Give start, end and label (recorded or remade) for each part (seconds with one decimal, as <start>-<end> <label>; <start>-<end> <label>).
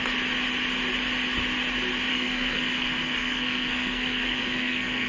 0.0-2.1 recorded; 2.1-5.1 remade